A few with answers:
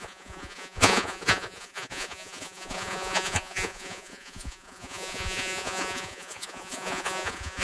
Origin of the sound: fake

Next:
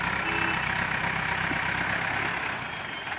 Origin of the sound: real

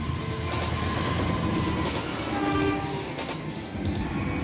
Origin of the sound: real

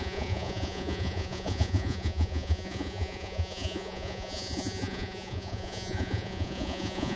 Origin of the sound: fake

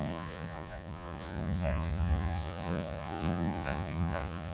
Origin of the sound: fake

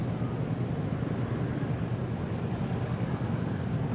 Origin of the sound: real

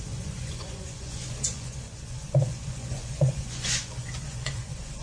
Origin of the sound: fake